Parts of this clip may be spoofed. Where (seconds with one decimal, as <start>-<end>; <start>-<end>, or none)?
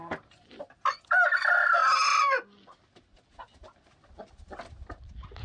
none